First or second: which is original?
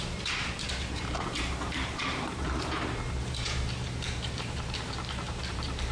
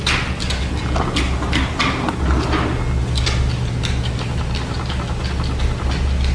second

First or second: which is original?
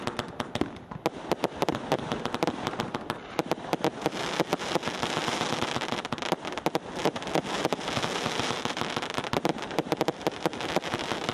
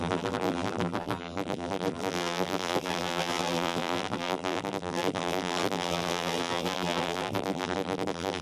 first